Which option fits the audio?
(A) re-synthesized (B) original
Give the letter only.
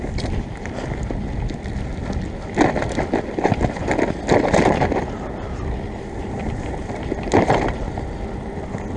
B